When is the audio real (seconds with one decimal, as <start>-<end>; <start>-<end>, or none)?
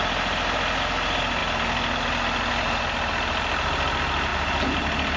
0.0-5.2